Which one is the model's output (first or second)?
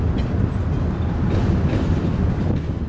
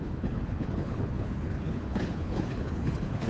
second